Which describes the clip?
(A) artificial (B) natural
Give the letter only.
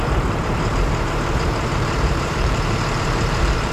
A